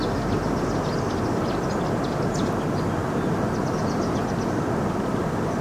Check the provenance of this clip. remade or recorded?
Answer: recorded